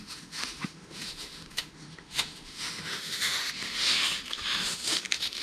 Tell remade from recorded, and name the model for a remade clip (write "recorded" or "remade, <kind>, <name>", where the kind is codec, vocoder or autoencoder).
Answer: remade, autoencoder, DAC-VAE